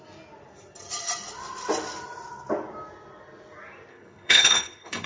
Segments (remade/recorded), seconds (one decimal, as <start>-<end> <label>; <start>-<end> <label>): 0.0-3.9 recorded; 3.9-5.1 remade